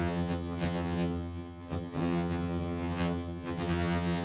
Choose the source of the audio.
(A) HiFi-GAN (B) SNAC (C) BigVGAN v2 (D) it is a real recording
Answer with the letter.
A